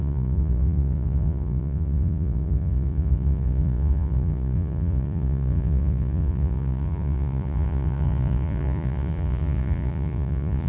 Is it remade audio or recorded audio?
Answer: remade